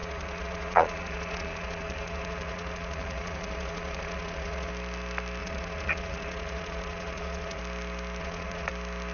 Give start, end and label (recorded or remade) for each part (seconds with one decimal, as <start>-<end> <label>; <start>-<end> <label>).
0.0-4.7 remade; 4.7-5.4 recorded; 5.4-7.6 remade; 7.6-8.2 recorded; 8.2-8.7 remade; 8.7-9.1 recorded